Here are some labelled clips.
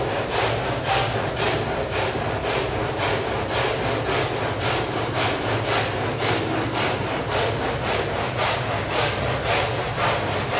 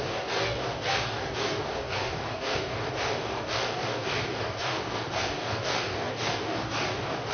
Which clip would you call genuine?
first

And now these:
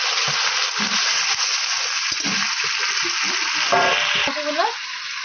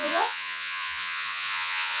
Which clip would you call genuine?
first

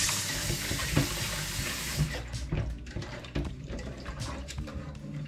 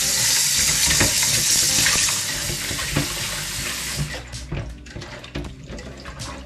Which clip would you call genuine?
second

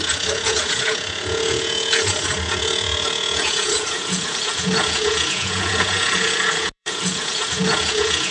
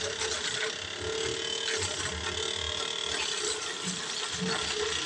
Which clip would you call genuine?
second